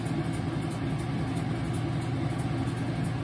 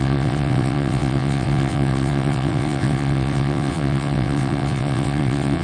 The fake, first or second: second